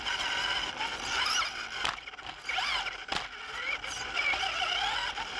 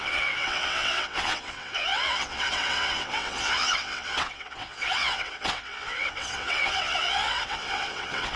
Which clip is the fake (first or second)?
second